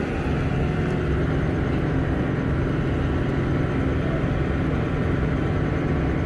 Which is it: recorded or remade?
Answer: recorded